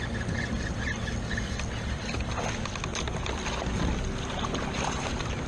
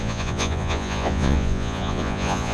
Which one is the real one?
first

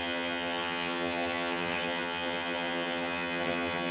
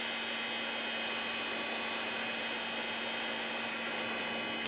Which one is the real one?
second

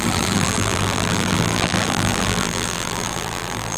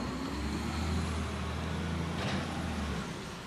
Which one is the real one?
second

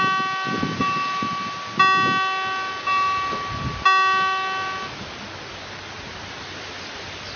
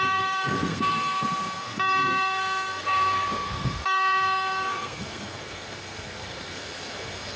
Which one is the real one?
first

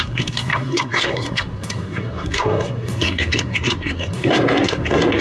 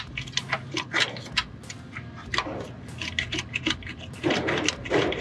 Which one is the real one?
second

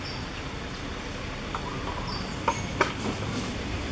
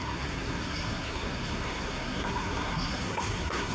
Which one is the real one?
first